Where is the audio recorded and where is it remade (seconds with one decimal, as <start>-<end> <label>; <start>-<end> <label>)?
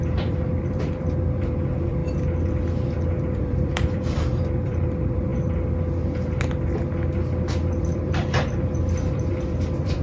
0.0-2.0 remade; 2.0-3.2 recorded; 3.2-5.3 remade; 5.3-7.8 recorded; 7.8-10.0 remade